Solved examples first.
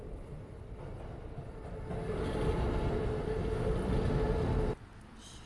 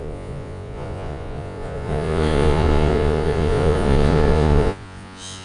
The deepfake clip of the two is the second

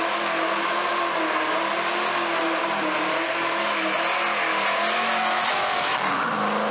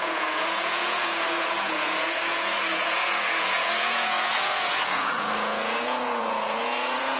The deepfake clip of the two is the second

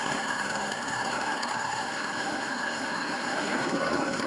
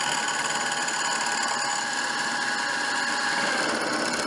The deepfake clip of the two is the first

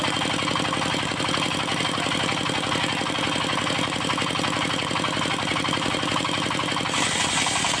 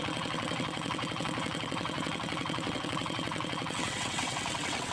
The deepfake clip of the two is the second